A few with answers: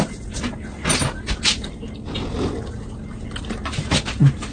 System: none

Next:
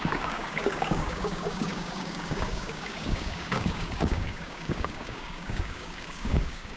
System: codec, DAC